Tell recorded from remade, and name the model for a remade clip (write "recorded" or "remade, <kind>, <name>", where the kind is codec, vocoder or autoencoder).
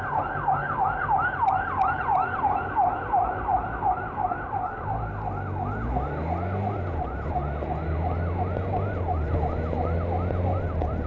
recorded